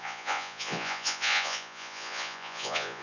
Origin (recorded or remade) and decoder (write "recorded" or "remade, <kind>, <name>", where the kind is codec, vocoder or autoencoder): remade, vocoder, Vocos